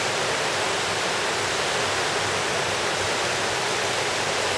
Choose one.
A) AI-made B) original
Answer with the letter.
B